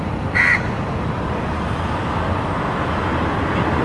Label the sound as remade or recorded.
recorded